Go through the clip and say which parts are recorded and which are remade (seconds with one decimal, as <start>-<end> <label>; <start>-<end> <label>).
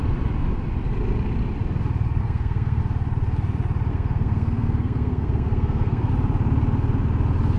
0.0-2.2 recorded; 2.2-2.8 remade; 2.8-3.9 recorded; 3.9-6.1 remade; 6.1-7.6 recorded